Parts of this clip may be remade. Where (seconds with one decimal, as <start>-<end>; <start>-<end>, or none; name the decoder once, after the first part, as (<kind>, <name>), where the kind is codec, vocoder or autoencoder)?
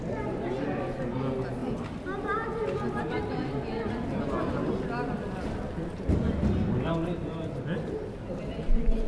none